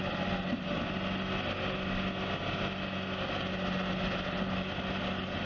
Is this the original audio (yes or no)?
yes